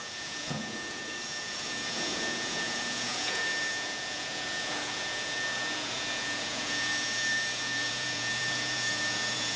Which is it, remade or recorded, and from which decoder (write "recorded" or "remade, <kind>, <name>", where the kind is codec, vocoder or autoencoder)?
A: remade, vocoder, Vocos